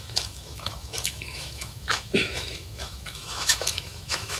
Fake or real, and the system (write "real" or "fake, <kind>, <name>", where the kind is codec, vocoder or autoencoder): fake, autoencoder, DAC-VAE